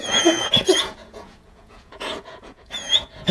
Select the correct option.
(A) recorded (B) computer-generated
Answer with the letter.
B